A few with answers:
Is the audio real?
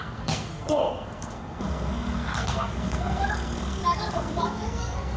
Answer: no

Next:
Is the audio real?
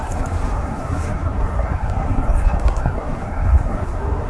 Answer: no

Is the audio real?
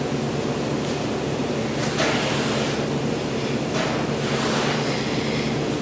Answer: yes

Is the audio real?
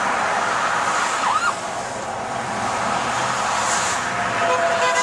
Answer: yes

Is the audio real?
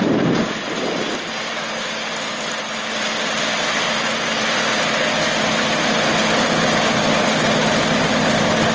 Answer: yes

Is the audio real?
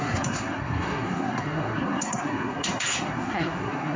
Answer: no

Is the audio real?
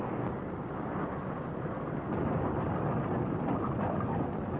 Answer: yes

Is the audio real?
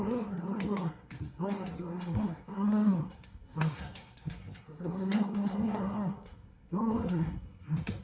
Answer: no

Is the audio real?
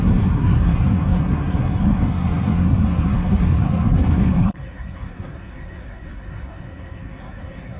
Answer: no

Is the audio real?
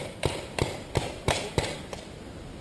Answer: yes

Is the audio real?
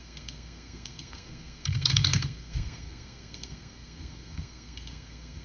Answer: no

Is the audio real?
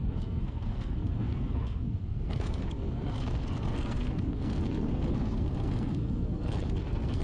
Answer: no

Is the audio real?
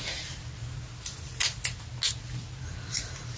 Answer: yes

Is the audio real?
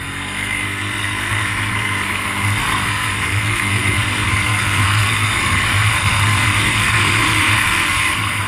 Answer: no